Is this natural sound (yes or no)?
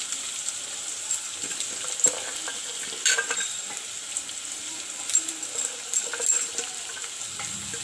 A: yes